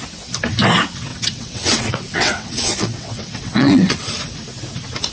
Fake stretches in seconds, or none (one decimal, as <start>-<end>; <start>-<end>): 1.1-4.2